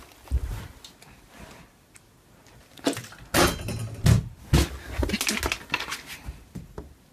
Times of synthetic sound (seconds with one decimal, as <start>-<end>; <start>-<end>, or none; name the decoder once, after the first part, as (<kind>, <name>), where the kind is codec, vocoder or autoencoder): none